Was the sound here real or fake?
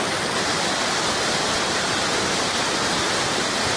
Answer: real